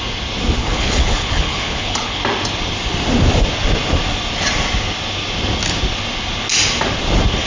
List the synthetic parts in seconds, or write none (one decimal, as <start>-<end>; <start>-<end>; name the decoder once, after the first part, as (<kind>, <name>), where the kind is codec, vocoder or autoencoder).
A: 0.6-2.2 (codec, HILCodec)